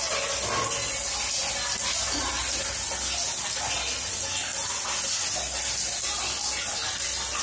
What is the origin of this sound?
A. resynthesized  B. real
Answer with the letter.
B